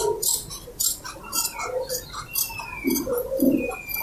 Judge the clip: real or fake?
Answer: real